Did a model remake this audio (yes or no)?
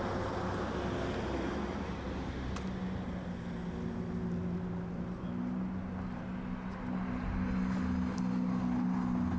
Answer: no